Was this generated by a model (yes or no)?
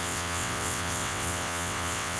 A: yes